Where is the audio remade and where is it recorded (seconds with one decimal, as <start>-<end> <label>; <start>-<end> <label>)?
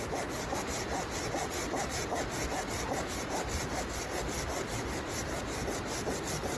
0.0-6.6 recorded